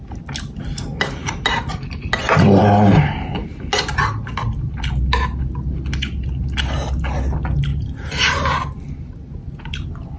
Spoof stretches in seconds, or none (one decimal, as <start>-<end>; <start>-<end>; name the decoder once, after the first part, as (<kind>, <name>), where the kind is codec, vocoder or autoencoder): none